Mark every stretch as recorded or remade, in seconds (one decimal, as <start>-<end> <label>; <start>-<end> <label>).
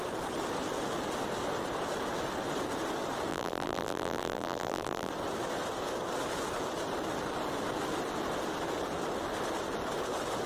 0.0-3.3 recorded; 3.3-5.1 remade; 5.1-10.5 recorded